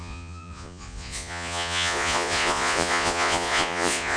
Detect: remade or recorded remade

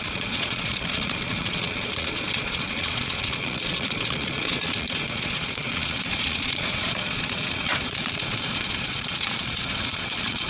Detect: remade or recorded remade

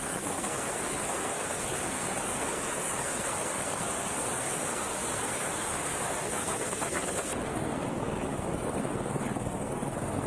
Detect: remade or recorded remade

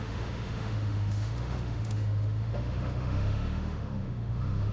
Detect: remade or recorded remade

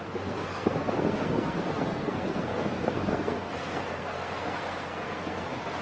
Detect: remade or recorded remade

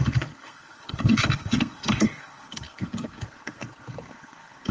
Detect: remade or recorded remade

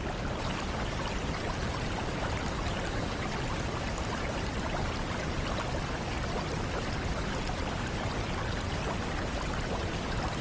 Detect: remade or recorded recorded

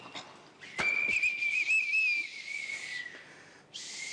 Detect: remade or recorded recorded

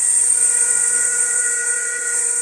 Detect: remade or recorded remade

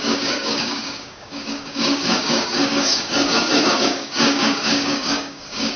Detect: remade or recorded remade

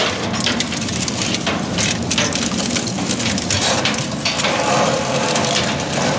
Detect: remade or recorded remade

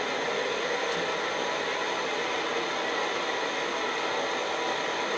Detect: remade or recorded recorded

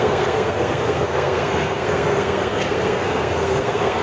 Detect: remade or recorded remade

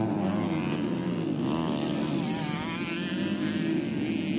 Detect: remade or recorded recorded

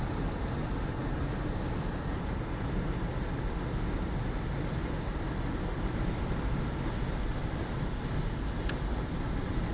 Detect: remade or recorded recorded